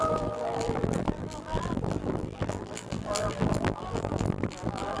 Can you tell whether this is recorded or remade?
remade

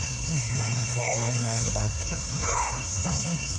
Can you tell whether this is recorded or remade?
remade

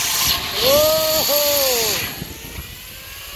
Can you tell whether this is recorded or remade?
recorded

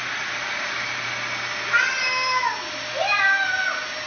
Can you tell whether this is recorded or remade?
recorded